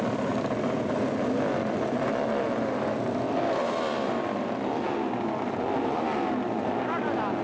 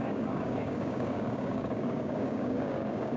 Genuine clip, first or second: first